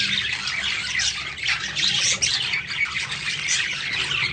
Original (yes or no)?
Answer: yes